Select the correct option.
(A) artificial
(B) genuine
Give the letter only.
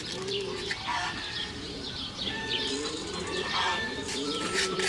A